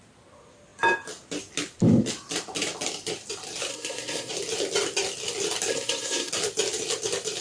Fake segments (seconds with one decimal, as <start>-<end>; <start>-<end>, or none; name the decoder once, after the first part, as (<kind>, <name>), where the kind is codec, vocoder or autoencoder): 3.7-4.3 (codec, SNAC); 5.7-6.3

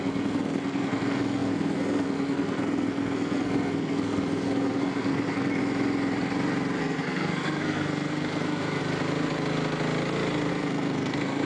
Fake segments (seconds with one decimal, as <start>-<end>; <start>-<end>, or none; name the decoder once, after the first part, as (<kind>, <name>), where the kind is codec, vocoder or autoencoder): 0.0-5.6 (codec, SNAC); 6.8-8.8; 10.5-11.5

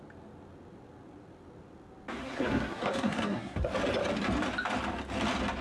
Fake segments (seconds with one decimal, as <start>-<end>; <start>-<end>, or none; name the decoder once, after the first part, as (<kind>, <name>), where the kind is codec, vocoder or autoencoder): 2.2-3.7 (codec, SNAC)

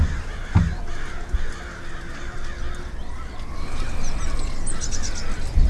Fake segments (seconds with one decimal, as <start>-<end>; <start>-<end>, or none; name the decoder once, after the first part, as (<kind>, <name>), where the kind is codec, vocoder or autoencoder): none

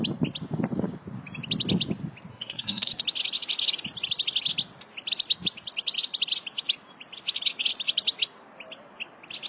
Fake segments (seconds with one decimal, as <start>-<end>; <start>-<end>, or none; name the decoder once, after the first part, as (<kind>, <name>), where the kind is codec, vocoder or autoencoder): 2.3-3.0 (codec, SNAC)

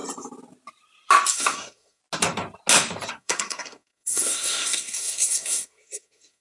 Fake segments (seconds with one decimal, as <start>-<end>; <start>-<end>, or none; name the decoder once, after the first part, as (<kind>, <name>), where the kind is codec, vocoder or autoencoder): 1.3-2.0 (codec, SNAC); 3.1-6.4

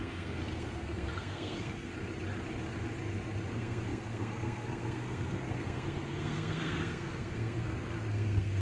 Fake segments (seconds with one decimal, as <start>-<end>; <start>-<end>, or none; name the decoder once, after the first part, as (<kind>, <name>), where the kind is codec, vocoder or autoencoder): 0.0-1.9 (codec, SNAC); 3.5-8.6